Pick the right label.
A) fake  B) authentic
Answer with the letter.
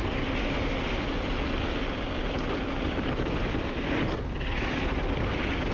B